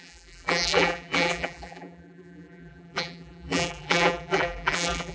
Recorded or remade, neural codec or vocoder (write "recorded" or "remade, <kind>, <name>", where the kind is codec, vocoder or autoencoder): remade, vocoder, BigVGAN v2